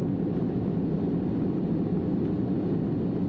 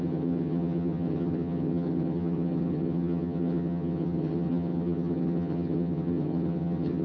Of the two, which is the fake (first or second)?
second